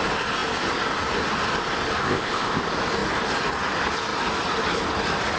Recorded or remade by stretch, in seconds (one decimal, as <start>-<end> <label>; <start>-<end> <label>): 0.0-2.0 recorded; 2.0-2.6 remade; 2.6-5.4 recorded